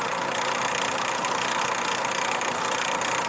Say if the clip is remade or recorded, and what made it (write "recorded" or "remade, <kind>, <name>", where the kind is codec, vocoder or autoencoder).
recorded